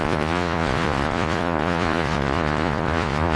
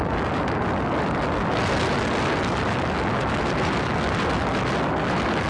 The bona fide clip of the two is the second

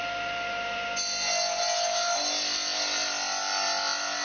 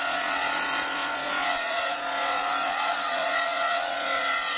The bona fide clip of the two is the first